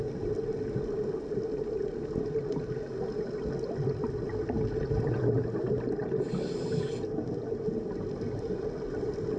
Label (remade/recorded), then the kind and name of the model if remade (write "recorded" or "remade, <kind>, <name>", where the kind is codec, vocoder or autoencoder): recorded